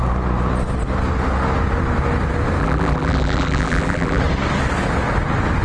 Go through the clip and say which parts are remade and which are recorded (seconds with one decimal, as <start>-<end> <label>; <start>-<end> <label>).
0.0-2.6 recorded; 2.6-4.2 remade; 4.2-5.6 recorded